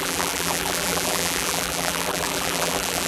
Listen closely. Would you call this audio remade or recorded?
remade